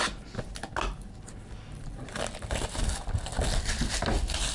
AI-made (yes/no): no